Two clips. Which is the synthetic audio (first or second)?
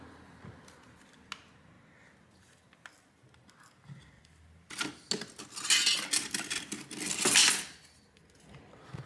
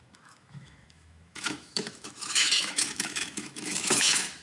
second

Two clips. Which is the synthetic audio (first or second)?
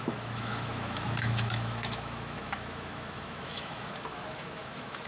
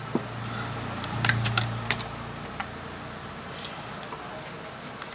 first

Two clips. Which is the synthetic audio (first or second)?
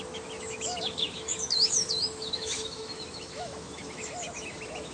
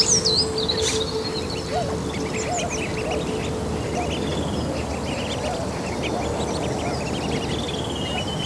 first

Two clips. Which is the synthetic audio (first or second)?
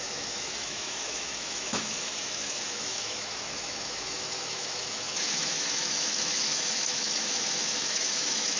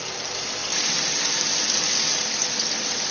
first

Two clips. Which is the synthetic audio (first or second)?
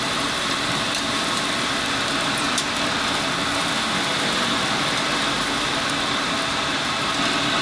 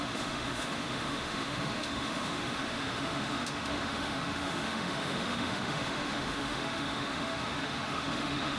second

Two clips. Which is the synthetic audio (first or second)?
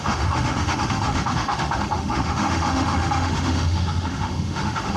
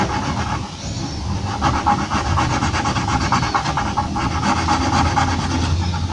first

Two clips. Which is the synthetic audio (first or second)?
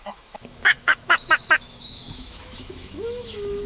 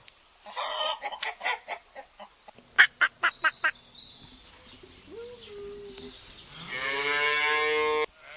first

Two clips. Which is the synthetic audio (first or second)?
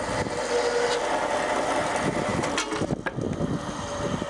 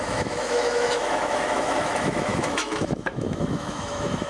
second